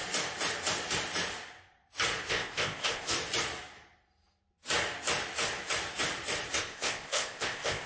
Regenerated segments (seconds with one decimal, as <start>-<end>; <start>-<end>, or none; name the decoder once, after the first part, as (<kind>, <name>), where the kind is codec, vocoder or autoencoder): 2.3-3.1 (codec, ZipCodec); 6.6-7.9

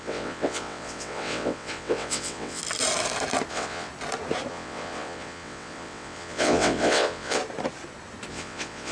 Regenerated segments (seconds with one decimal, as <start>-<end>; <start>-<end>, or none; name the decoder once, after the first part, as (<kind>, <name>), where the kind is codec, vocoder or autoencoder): 0.0-2.6 (vocoder, WaveNeXt); 3.5-3.9; 4.5-7.4; 8.3-8.9

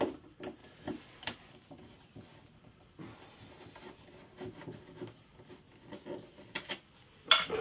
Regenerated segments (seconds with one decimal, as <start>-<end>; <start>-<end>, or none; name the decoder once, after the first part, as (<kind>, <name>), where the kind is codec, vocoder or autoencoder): none

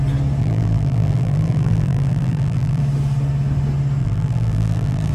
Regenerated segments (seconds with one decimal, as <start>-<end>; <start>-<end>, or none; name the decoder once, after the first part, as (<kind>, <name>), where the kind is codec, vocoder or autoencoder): 0.4-2.8 (vocoder, BigVGAN v2); 4.0-5.1

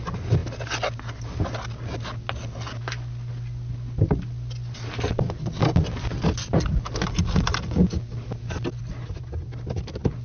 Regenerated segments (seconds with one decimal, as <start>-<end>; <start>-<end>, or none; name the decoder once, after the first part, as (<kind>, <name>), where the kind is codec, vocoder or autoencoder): none

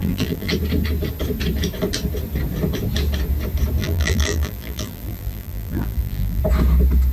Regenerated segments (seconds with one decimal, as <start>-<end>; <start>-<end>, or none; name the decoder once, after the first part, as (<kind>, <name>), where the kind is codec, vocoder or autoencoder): 0.0-0.5 (vocoder, BigVGAN v2); 3.8-6.4